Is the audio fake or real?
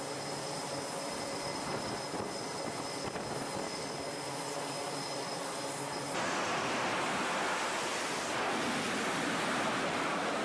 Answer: real